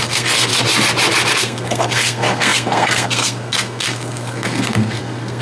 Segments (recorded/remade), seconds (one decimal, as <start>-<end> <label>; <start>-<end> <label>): 0.0-0.5 remade; 0.5-1.3 recorded; 1.3-5.4 remade